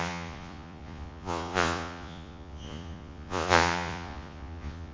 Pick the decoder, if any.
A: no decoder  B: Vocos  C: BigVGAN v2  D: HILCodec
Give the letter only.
B